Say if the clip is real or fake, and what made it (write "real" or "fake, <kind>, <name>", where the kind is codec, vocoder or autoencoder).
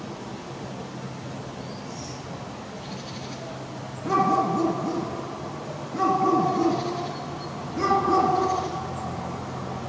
real